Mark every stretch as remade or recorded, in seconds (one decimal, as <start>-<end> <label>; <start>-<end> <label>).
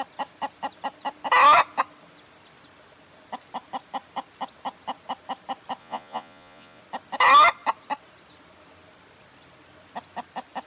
0.0-5.8 recorded; 5.8-6.8 remade; 6.8-10.7 recorded